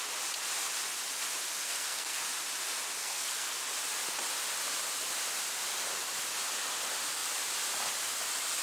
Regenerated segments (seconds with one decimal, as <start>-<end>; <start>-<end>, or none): 1.6-2.2; 3.0-3.6